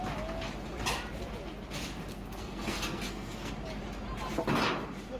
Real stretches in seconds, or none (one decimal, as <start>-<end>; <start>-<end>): 0.0-2.1; 3.5-5.2